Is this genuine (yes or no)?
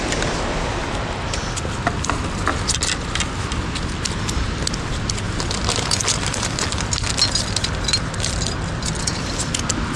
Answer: yes